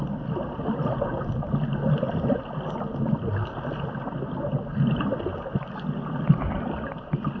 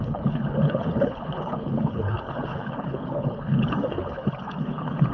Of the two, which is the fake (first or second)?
second